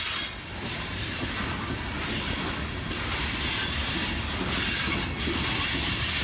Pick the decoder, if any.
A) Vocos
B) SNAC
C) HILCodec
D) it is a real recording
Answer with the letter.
D